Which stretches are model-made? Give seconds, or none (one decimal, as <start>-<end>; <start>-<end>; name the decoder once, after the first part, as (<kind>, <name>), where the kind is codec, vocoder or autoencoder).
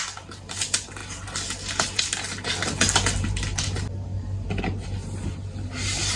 none